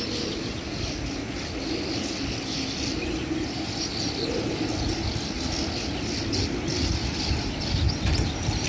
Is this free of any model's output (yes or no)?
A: yes